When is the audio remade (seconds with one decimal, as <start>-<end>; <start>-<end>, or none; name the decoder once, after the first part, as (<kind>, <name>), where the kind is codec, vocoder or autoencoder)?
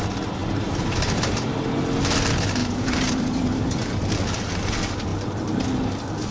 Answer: 0.4-1.8 (vocoder, BigVGAN v2); 2.6-3.7